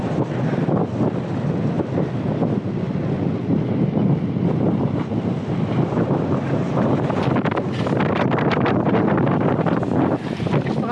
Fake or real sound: real